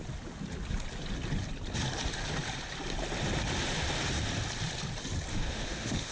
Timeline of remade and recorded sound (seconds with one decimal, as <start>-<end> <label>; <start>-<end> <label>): 0.0-5.3 recorded; 5.3-6.1 remade